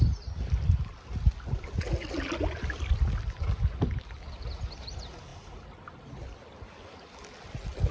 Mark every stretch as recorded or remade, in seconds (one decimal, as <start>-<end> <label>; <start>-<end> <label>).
0.0-7.9 recorded